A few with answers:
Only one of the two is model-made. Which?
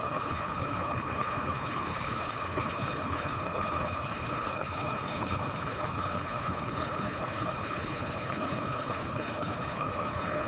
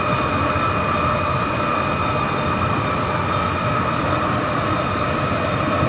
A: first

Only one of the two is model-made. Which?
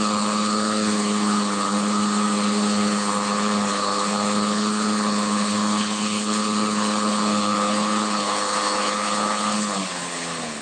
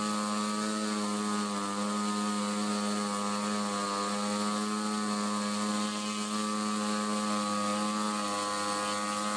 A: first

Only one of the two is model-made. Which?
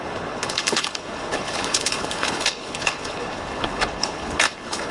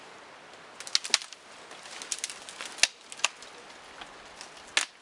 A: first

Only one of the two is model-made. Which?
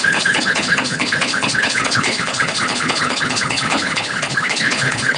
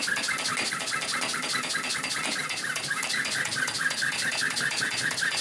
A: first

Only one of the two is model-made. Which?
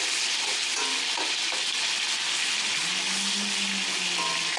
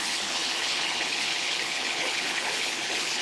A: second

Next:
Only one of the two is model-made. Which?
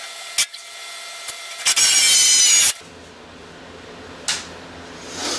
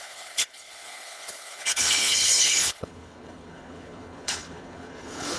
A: second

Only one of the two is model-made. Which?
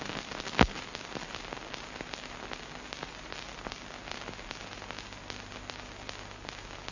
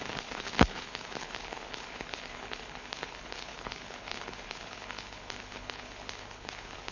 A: second